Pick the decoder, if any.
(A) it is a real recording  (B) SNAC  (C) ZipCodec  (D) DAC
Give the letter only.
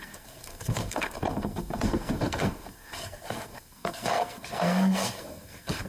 B